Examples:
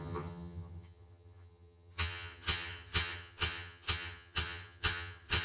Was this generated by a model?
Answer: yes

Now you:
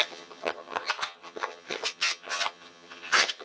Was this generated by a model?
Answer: yes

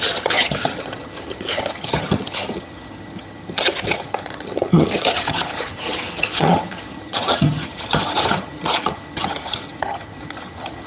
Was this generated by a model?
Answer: yes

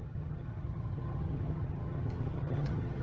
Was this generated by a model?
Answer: yes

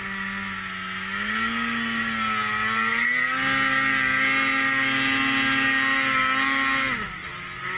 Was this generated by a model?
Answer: no